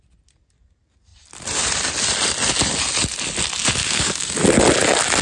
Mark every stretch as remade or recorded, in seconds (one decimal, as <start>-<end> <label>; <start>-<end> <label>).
0.0-3.8 recorded; 3.8-4.4 remade; 4.4-5.2 recorded

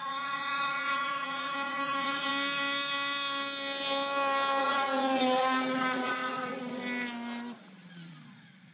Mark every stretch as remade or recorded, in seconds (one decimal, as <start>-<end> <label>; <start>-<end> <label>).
0.0-2.3 remade; 2.3-4.6 recorded; 4.6-6.8 remade; 6.8-7.6 recorded; 7.6-8.7 remade

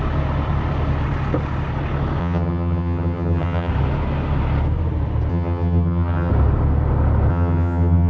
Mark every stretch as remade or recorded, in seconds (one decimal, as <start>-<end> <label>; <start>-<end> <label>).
0.0-2.2 recorded; 2.2-3.7 remade; 3.7-5.3 recorded; 5.3-6.3 remade; 6.3-7.3 recorded; 7.3-8.1 remade

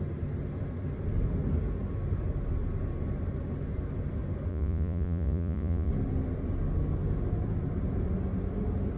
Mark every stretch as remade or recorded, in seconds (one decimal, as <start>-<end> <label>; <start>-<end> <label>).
0.0-4.5 recorded; 4.5-5.9 remade; 5.9-9.0 recorded

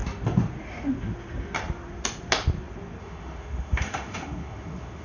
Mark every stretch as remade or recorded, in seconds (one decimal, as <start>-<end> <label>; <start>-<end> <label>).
0.0-3.0 recorded; 3.0-5.0 remade

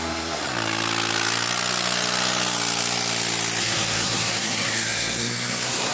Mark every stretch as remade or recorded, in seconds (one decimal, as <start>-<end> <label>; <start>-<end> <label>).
0.0-0.4 remade; 0.4-3.6 recorded; 3.6-5.9 remade

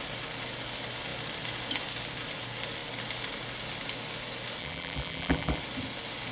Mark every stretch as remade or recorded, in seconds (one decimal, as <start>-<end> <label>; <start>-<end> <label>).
0.0-4.6 recorded; 4.6-5.6 remade; 5.6-6.3 recorded